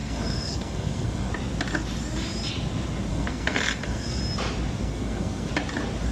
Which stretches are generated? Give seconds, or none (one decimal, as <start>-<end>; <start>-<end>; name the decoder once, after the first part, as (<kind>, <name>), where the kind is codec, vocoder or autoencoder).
0.0-1.3 (codec, SNAC); 3.1-4.2; 4.8-5.5